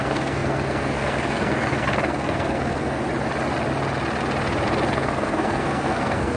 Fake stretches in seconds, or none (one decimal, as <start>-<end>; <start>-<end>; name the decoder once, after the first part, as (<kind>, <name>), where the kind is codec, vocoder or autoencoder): 0.0-3.0 (codec, SNAC); 4.9-6.4